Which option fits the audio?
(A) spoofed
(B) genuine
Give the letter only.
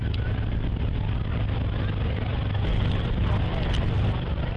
B